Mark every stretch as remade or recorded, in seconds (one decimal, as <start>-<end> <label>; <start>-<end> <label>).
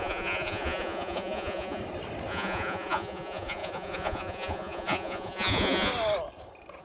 0.0-1.8 remade; 1.8-2.3 recorded; 2.3-5.9 remade; 5.9-6.8 recorded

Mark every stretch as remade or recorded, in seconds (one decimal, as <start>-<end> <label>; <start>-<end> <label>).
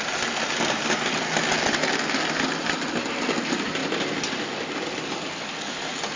0.0-6.2 recorded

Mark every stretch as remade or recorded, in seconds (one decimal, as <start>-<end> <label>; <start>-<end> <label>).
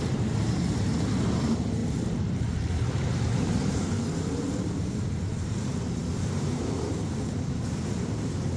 0.0-8.6 remade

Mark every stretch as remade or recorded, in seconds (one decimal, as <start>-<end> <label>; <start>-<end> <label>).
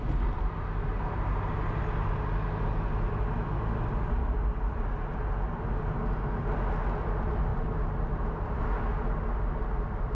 0.0-10.1 recorded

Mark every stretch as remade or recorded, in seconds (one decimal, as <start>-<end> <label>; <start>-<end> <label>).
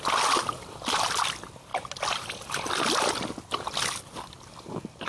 0.0-5.1 recorded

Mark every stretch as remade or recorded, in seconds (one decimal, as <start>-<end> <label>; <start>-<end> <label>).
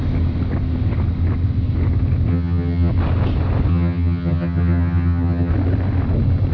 0.0-2.3 recorded; 2.3-2.9 remade; 2.9-3.7 recorded; 3.7-5.5 remade; 5.5-6.5 recorded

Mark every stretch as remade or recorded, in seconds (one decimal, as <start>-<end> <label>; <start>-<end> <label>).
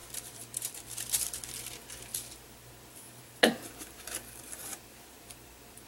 0.0-1.5 remade; 1.5-2.1 recorded; 2.1-5.9 remade